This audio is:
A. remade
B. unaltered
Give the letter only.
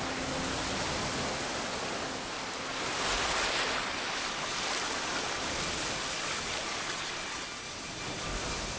B